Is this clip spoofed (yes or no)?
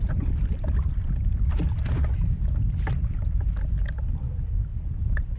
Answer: no